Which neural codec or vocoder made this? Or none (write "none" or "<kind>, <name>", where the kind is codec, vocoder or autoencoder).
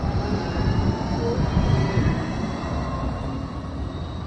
none